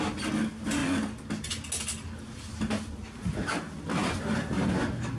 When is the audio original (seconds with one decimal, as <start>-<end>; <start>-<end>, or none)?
0.0-0.8; 1.5-4.0; 4.5-5.2